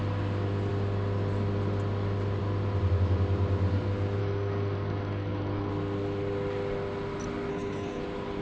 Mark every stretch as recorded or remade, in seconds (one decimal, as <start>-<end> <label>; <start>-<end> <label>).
0.0-4.2 recorded; 4.2-5.7 remade; 5.7-7.5 recorded; 7.5-8.0 remade; 8.0-8.4 recorded